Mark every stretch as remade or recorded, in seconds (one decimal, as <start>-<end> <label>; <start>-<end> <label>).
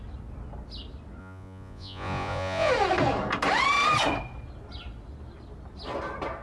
0.0-1.2 recorded; 1.2-2.7 remade; 2.7-6.4 recorded